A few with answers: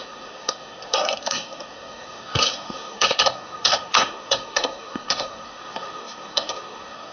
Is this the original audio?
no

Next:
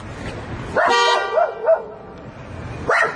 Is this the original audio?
yes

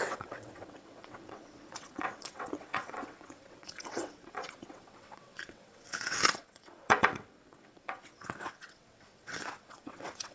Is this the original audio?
no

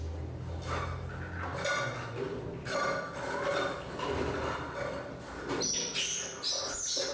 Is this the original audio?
yes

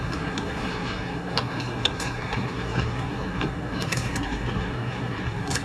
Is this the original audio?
no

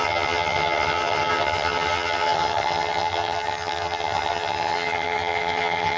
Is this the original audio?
no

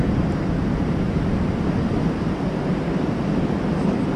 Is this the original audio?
yes